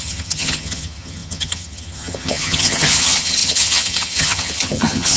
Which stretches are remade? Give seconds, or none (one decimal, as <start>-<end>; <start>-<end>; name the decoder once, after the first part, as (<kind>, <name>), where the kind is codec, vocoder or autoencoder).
0.0-5.2 (vocoder, HiFi-GAN)